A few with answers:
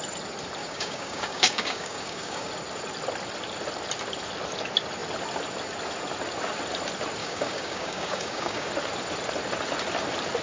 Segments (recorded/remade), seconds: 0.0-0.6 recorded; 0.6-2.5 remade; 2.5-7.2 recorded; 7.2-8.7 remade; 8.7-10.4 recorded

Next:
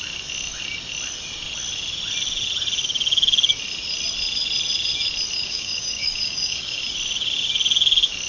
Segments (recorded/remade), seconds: 0.0-5.4 recorded; 5.4-6.8 remade; 6.8-8.3 recorded